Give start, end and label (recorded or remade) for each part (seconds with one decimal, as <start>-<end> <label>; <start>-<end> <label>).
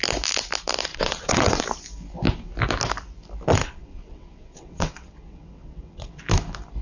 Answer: 0.0-0.9 recorded; 0.9-1.6 remade; 1.6-3.6 recorded; 3.6-6.2 remade; 6.2-6.8 recorded